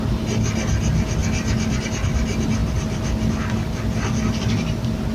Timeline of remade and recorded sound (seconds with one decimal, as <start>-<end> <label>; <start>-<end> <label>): 0.0-5.1 recorded